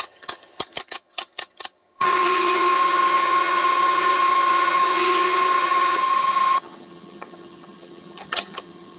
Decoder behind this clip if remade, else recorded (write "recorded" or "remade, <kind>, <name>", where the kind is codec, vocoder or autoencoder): remade, vocoder, HiFi-GAN